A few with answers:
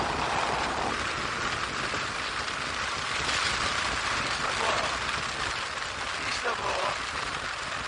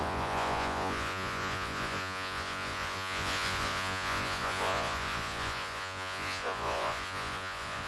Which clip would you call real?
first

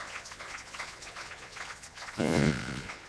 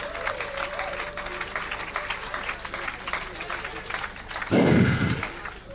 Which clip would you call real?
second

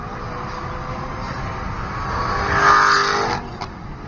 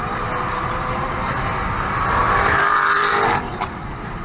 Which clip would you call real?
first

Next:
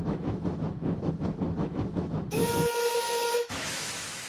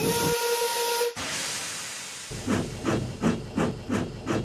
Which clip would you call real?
second